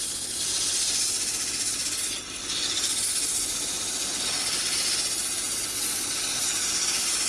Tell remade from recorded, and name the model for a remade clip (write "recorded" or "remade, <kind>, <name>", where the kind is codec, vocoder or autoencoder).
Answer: recorded